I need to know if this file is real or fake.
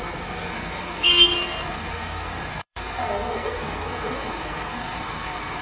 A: fake